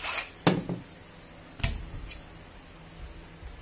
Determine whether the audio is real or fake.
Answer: real